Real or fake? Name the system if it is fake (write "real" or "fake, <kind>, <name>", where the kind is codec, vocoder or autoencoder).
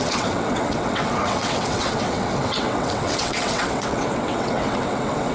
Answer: fake, vocoder, WaveNeXt